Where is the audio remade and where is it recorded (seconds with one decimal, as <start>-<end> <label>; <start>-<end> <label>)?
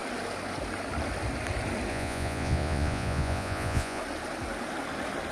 0.0-1.9 recorded; 1.9-4.0 remade; 4.0-5.3 recorded